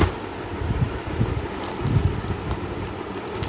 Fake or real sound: real